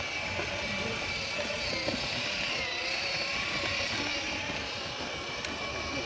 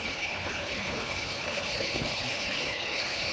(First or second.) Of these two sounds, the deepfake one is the second